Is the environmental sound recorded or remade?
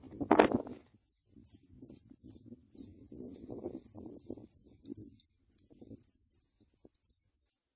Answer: recorded